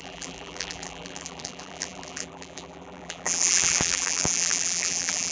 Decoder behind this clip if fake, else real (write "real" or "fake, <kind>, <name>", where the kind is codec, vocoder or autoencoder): fake, vocoder, BigVGAN v2